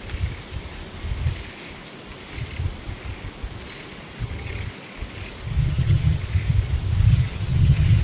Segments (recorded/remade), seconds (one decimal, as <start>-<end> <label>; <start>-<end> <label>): 0.0-4.2 recorded; 4.2-4.7 remade; 4.7-5.6 recorded; 5.6-6.2 remade; 6.2-7.1 recorded; 7.1-8.0 remade